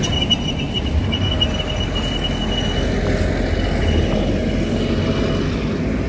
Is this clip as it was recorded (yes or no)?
yes